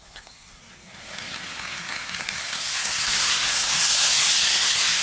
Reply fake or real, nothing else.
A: fake